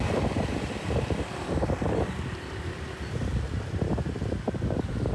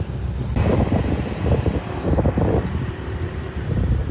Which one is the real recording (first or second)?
second